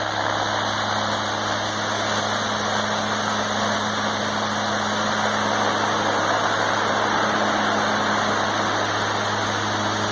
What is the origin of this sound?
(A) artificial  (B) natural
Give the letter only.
B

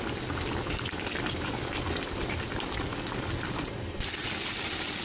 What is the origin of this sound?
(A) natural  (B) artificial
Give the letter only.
A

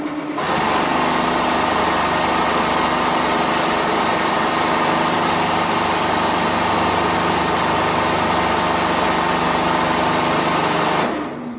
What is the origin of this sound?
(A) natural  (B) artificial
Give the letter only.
A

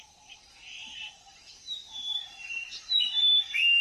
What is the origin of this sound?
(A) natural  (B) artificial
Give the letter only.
B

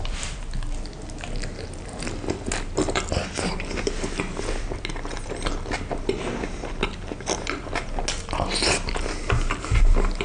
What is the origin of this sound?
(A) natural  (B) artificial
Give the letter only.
A